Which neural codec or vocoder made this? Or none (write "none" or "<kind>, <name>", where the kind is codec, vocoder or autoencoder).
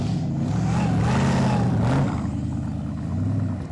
none